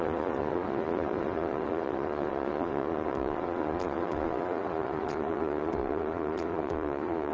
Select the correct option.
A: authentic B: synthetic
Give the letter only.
B